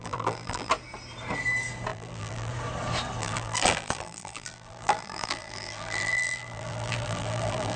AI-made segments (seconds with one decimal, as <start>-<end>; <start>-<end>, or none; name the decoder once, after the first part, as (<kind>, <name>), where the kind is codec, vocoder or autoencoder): 0.0-0.7 (vocoder, BigVGAN v2); 1.9-2.5; 3.2-7.8